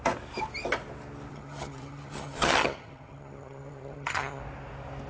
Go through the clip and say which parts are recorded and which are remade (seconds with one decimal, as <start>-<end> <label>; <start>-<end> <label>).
0.0-1.3 recorded; 1.3-4.4 remade; 4.4-5.1 recorded